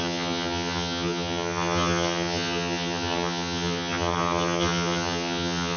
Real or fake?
fake